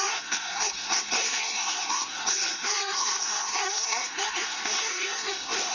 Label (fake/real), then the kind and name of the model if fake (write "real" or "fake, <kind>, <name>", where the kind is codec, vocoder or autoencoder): fake, codec, SNAC